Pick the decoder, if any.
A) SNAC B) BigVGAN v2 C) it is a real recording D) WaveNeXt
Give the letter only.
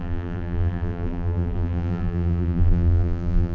B